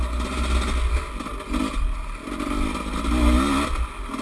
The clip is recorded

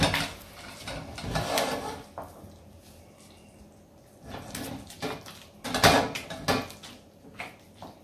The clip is recorded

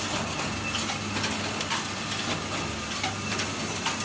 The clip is recorded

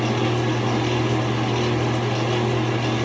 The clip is recorded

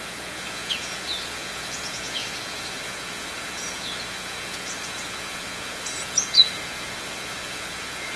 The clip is remade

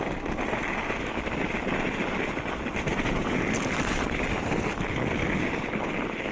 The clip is recorded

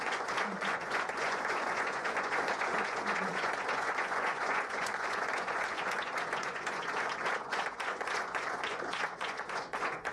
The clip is remade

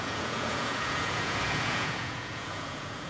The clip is remade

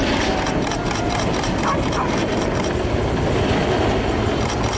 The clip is recorded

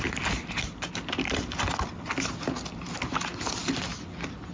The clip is recorded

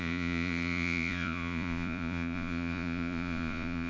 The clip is remade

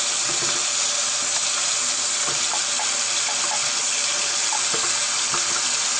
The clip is recorded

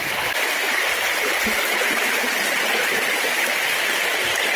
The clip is recorded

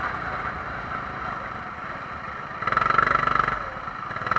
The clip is recorded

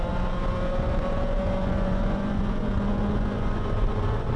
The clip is remade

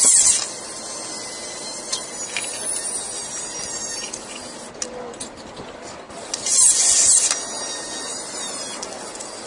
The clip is recorded